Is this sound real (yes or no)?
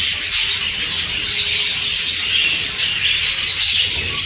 yes